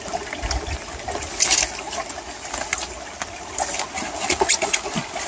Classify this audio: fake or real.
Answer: real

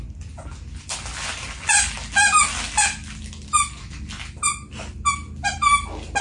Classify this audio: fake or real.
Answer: real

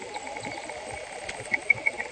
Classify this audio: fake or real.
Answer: real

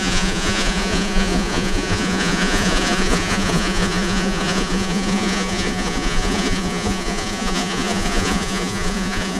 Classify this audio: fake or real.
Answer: fake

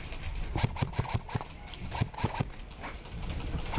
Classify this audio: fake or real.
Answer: real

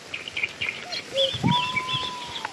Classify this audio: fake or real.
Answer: real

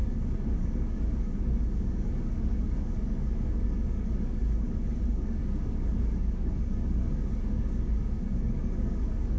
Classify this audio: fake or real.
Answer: fake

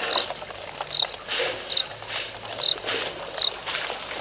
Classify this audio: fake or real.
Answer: real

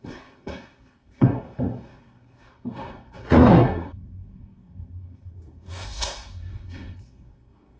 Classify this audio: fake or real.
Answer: fake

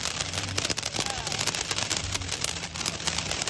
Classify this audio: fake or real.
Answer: real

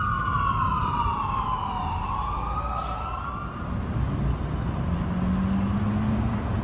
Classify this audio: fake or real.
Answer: real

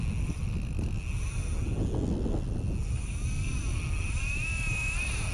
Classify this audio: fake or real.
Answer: real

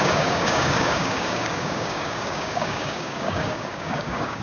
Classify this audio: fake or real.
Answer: fake